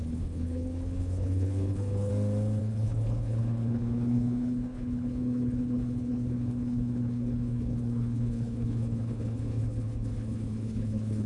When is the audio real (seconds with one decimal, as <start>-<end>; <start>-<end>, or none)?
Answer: 2.1-2.6